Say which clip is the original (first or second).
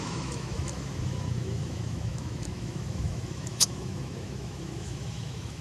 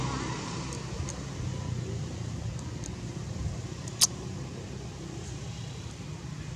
second